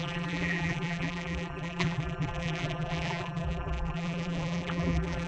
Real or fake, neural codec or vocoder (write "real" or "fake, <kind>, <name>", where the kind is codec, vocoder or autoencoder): fake, vocoder, BigVGAN v2